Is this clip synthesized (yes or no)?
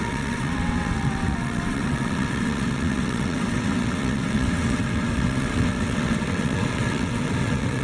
yes